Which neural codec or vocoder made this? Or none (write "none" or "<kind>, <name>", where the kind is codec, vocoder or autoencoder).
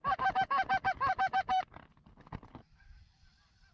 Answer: none